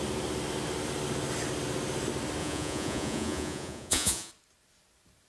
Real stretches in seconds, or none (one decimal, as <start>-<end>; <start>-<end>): 0.0-2.4; 4.3-5.3